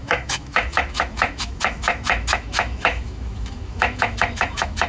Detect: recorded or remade remade